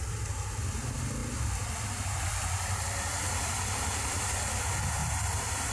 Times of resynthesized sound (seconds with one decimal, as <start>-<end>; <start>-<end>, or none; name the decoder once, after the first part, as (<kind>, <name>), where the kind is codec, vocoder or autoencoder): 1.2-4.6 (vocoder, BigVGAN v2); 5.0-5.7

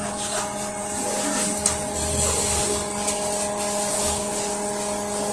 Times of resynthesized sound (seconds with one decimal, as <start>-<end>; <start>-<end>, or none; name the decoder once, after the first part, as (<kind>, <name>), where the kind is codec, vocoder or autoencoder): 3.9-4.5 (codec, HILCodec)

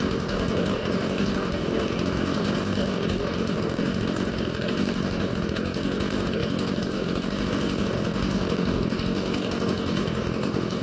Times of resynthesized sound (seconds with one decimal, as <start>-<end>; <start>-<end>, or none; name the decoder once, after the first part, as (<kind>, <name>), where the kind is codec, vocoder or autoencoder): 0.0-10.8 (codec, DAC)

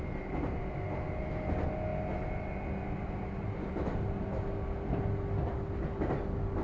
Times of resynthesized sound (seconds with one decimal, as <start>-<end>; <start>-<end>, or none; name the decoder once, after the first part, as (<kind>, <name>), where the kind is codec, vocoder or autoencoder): none